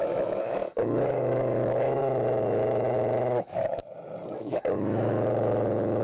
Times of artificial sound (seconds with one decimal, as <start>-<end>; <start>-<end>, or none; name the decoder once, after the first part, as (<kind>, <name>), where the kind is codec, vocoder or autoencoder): 0.0-3.8 (autoencoder, DAC-VAE); 4.4-6.0